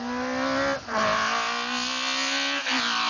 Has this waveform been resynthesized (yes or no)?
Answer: no